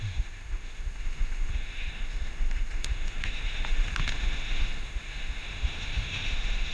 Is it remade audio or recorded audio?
remade